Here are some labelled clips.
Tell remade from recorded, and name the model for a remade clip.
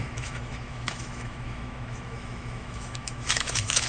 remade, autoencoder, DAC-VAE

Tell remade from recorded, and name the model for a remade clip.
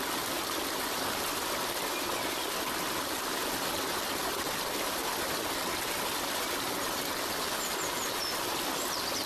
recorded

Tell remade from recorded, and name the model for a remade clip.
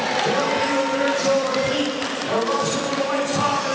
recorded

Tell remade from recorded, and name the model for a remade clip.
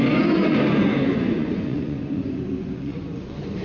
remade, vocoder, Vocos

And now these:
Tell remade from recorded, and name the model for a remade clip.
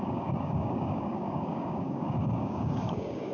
remade, codec, DAC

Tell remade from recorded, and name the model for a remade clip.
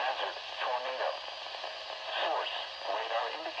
recorded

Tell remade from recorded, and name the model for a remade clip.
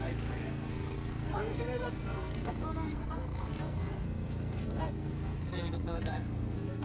remade, codec, SNAC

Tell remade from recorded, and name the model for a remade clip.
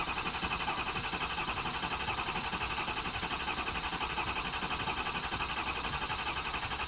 recorded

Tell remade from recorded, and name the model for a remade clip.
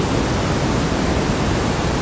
recorded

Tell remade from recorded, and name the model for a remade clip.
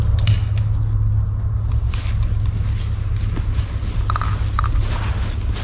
recorded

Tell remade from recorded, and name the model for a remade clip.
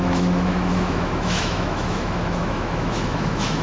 remade, autoencoder, DAC-VAE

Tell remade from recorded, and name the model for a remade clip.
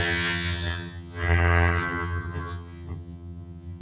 remade, vocoder, HiFi-GAN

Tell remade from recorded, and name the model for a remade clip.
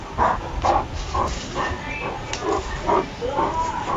recorded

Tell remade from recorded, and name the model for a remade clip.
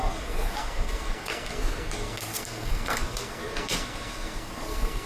remade, codec, SNAC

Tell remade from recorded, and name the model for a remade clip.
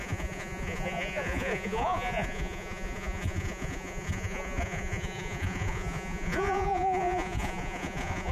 remade, vocoder, Vocos